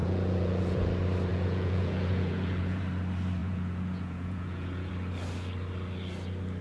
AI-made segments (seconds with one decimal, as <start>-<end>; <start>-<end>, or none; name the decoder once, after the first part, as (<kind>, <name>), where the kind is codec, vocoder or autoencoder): 0.0-0.9 (vocoder, Vocos); 1.3-2.8; 3.4-4.9